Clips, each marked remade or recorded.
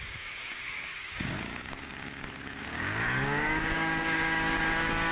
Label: remade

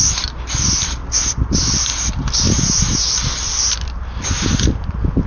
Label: recorded